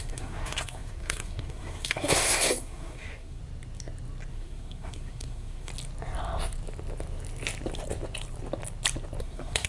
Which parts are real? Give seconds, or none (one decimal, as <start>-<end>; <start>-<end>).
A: 3.4-4.3; 5.7-9.2